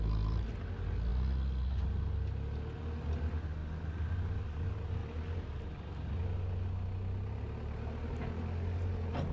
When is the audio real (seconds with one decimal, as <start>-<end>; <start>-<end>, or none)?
0.0-9.3